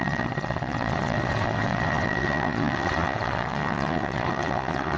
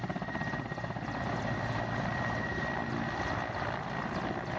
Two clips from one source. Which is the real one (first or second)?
second